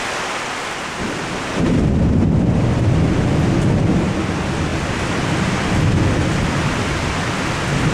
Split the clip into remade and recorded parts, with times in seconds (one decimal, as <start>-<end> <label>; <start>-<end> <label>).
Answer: 0.0-4.7 recorded; 4.7-6.8 remade; 6.8-7.9 recorded